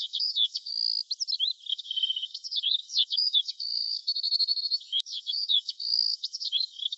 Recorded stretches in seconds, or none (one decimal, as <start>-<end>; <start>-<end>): 0.7-1.7